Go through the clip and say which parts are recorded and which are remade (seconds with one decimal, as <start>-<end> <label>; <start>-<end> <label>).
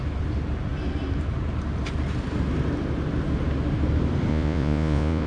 0.0-4.3 recorded; 4.3-5.3 remade